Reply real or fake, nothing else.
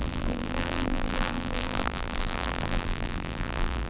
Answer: fake